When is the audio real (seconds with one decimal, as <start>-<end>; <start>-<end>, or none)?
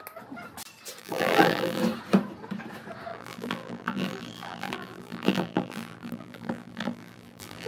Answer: 0.0-1.0; 1.8-3.1